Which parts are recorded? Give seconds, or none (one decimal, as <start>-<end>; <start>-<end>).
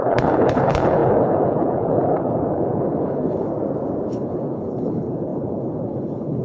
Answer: 3.5-4.1